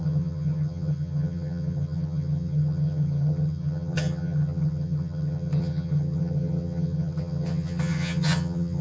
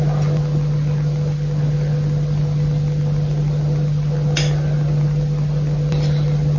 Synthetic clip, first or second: first